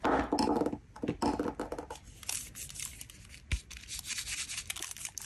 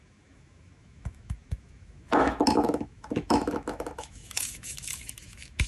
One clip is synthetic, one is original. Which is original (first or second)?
first